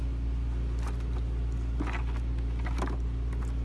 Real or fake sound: real